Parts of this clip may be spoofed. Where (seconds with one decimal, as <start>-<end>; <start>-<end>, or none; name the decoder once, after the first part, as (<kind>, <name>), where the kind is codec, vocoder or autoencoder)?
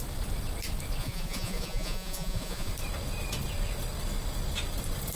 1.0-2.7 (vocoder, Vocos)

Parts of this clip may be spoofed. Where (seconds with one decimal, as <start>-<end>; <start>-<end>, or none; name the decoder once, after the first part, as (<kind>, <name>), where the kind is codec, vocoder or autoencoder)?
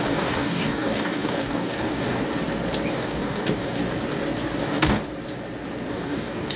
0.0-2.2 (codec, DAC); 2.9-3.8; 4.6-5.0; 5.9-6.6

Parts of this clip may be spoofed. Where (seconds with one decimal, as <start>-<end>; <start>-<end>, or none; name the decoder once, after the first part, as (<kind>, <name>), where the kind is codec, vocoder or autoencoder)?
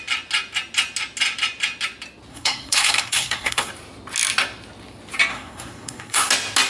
2.3-3.7 (codec, SNAC); 5.3-6.3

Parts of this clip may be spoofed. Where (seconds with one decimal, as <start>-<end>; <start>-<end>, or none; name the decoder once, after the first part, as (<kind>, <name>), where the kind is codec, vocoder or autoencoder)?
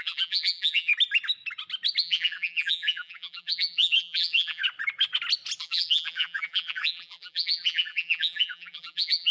0.0-0.9 (vocoder, BigVGAN v2); 2.0-4.6; 5.6-9.3